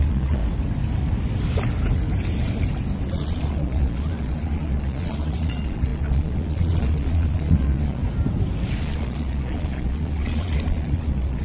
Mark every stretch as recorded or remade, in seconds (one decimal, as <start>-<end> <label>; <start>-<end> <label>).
0.0-0.4 remade; 0.4-3.1 recorded; 3.1-8.0 remade; 8.0-8.8 recorded; 8.8-11.4 remade